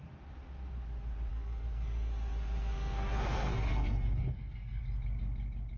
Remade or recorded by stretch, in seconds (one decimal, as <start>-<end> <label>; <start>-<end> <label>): 0.0-1.3 recorded; 1.3-4.8 remade; 4.8-5.8 recorded